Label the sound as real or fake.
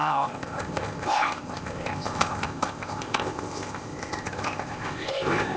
fake